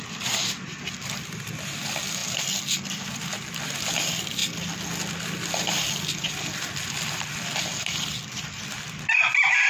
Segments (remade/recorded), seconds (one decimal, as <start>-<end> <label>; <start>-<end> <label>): 0.0-9.7 recorded

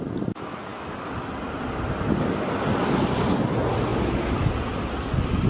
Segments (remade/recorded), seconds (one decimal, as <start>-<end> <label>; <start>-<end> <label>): 0.0-5.5 recorded